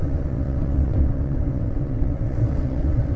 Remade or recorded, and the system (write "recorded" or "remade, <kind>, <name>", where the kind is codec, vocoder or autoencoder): remade, vocoder, WaveNeXt